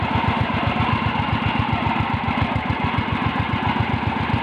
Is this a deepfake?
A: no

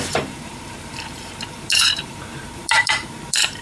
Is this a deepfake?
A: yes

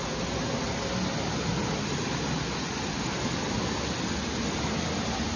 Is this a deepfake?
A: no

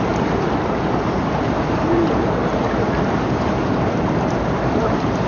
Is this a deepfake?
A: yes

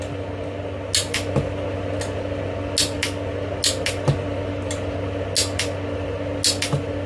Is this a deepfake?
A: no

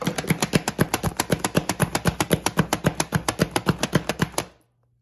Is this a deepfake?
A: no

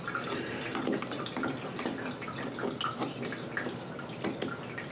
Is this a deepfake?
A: no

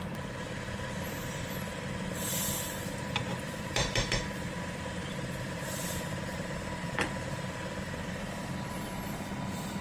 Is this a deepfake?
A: yes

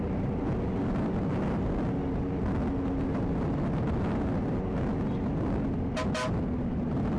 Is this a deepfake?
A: no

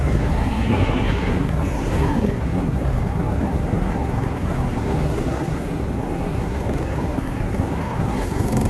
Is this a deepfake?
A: yes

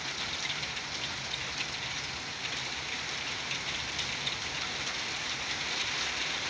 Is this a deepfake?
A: no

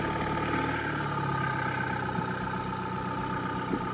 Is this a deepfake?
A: no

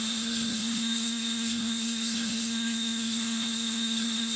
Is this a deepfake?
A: yes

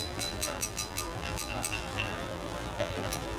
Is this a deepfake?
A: yes